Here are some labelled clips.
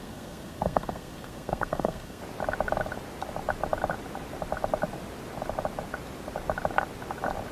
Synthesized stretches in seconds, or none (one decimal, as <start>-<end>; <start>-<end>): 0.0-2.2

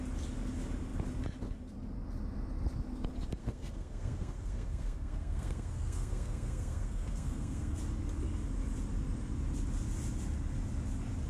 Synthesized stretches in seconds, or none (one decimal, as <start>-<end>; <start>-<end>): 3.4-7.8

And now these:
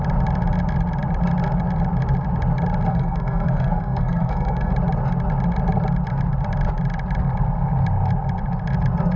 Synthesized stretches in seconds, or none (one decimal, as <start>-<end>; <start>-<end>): 2.9-4.7

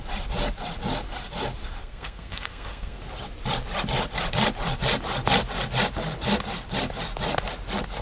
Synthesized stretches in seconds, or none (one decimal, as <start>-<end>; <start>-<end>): 1.8-3.0

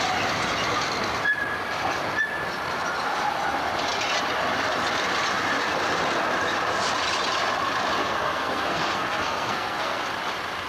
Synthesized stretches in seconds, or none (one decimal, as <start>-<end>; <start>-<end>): 8.0-10.0

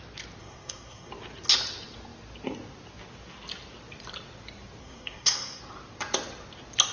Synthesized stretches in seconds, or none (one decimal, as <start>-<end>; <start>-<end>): 0.4-1.1; 4.8-5.6

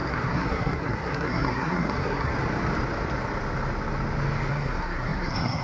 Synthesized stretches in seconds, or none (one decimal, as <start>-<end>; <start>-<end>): 0.0-2.3; 4.5-5.6